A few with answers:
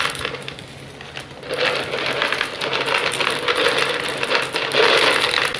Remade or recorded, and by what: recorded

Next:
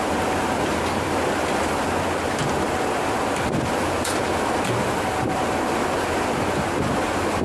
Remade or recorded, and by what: recorded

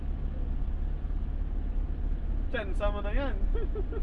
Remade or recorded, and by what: recorded